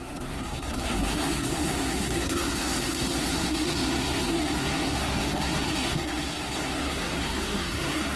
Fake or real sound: fake